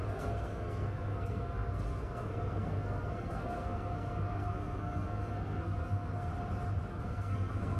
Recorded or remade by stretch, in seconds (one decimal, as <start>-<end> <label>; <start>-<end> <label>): 0.0-6.3 remade; 6.3-6.9 recorded; 6.9-7.8 remade